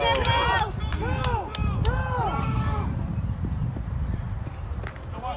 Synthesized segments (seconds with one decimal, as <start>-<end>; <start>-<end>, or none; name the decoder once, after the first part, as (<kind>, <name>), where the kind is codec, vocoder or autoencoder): 1.6-4.8 (vocoder, BigVGAN v2)